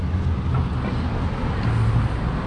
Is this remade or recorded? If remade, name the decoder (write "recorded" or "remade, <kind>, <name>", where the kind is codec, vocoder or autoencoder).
recorded